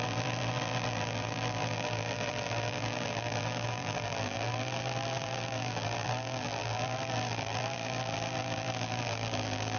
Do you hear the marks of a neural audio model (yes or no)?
yes